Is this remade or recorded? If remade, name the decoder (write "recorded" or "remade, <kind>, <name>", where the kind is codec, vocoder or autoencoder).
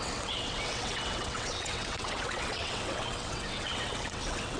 remade, vocoder, WaveNeXt